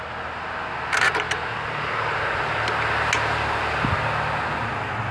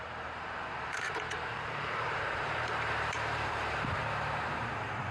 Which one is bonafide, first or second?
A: first